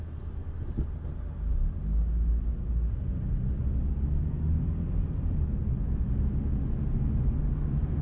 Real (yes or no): yes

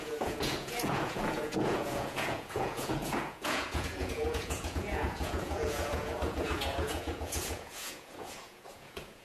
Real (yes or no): no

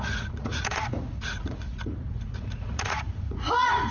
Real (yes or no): no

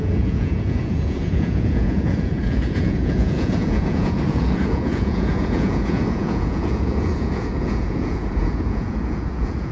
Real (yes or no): no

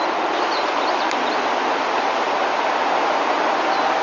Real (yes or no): yes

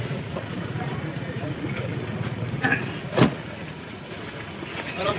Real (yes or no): no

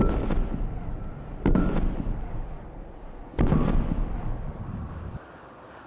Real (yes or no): yes